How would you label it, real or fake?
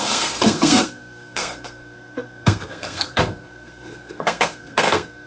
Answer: fake